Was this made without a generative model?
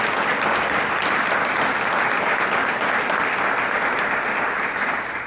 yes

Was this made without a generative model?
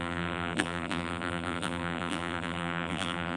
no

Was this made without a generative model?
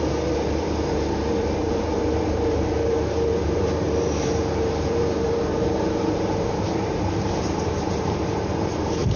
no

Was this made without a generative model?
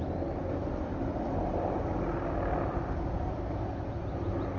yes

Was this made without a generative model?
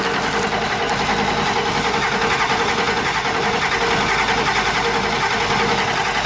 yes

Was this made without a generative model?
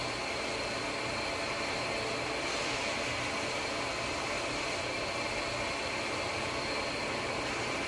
yes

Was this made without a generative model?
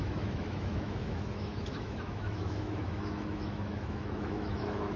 no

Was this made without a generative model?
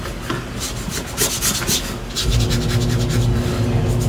yes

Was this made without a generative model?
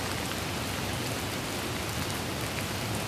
yes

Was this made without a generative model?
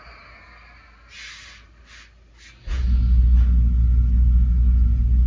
yes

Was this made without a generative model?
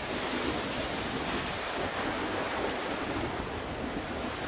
yes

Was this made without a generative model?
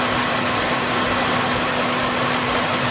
yes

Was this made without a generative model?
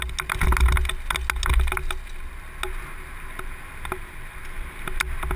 yes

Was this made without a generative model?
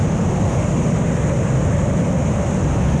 yes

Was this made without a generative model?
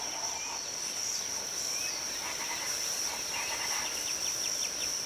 yes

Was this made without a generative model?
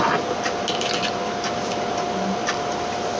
yes